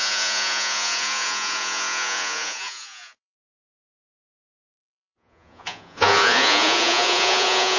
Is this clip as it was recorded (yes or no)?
no